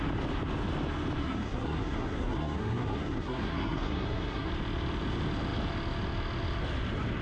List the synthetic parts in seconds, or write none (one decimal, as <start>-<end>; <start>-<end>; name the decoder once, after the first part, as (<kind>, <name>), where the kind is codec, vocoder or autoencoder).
1.2-4.5 (codec, SNAC)